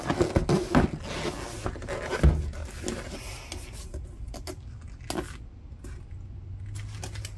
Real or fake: real